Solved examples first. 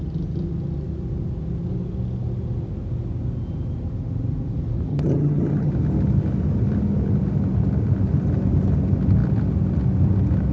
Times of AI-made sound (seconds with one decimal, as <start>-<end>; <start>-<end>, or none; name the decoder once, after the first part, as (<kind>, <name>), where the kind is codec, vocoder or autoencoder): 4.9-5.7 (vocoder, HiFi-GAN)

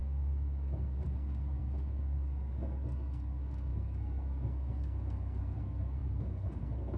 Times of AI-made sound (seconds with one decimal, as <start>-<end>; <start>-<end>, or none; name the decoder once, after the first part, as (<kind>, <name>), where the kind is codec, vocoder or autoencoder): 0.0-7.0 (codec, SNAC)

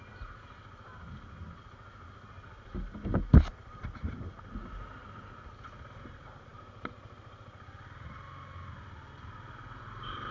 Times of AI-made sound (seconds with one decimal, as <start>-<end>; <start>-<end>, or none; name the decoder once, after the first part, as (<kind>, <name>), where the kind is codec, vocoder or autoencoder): none

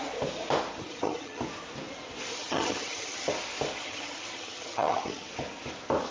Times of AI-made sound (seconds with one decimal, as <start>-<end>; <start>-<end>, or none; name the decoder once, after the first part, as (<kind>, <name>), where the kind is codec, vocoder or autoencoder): 0.8-1.4 (vocoder, HiFi-GAN); 2.3-3.3; 3.8-5.3